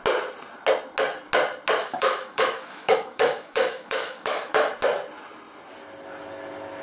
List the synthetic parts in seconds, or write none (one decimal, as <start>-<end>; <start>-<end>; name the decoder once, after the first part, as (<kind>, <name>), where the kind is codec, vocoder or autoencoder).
1.8-4.7 (autoencoder, DAC-VAE)